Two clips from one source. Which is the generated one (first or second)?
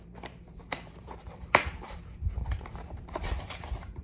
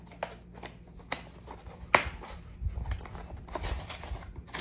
first